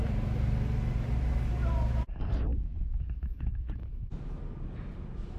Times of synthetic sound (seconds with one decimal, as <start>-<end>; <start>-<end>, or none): 2.5-4.1